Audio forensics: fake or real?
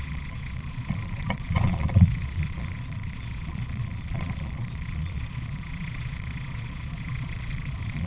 fake